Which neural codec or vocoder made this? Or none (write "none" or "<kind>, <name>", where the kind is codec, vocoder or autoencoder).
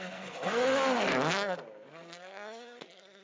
codec, SNAC